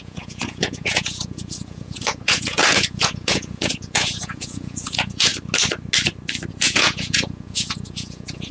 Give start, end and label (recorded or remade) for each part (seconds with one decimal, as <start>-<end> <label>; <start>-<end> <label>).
0.0-5.3 remade; 5.3-6.5 recorded; 6.5-8.5 remade